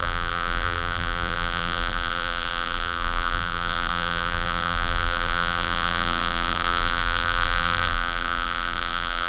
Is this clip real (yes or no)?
no